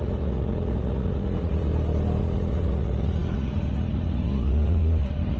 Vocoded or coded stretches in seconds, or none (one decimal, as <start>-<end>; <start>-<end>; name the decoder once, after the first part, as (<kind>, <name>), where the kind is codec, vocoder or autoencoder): 0.0-1.7 (vocoder, Vocos); 2.2-5.4